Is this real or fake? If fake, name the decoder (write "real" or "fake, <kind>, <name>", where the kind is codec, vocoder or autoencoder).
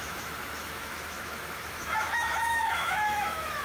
fake, autoencoder, DAC-VAE